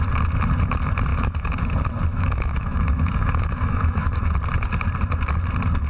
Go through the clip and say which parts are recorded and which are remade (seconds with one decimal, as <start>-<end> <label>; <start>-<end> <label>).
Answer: 0.0-1.1 recorded; 1.1-1.7 remade; 1.7-2.1 recorded; 2.1-4.3 remade; 4.3-5.9 recorded